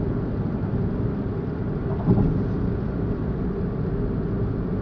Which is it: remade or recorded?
recorded